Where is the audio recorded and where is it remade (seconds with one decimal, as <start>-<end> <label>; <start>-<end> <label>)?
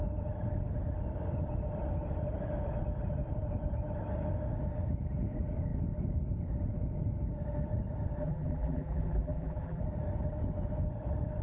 0.0-8.2 recorded; 8.2-9.8 remade; 9.8-11.4 recorded